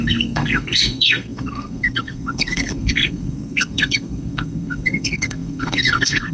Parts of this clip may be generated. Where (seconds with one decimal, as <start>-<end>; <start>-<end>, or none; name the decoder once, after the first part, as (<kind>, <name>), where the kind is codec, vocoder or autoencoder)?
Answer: 0.0-6.3 (codec, SNAC)